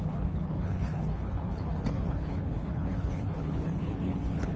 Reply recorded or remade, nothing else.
remade